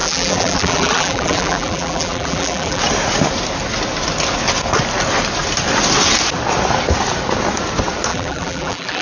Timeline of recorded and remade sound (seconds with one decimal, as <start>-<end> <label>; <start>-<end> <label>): 0.0-2.8 remade; 2.8-8.1 recorded; 8.1-9.0 remade